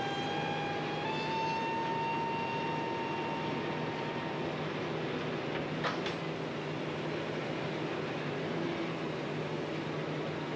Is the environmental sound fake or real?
real